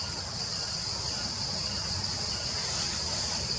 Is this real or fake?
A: real